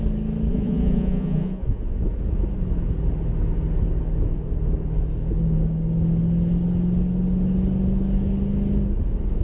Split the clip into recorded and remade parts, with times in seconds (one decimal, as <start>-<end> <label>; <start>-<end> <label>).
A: 0.0-0.5 recorded; 0.5-1.8 remade; 1.8-9.4 recorded